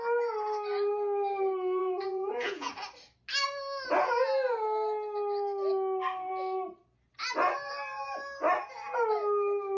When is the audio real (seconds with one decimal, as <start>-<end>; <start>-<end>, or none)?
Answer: 0.0-1.8; 2.7-9.8